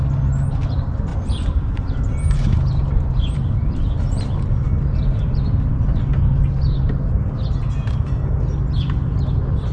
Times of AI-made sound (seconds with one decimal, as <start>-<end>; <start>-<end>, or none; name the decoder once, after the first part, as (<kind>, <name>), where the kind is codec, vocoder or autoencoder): 1.1-6.0 (vocoder, BigVGAN v2)